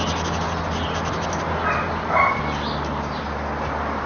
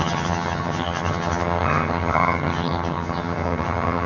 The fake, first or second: second